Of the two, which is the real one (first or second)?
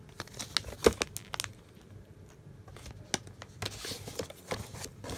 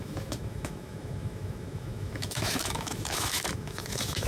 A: first